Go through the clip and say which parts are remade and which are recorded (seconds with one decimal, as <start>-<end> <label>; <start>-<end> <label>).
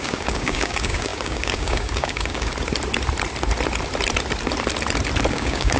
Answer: 0.0-2.5 remade; 2.5-5.3 recorded; 5.3-5.8 remade